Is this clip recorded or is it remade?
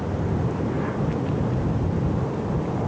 recorded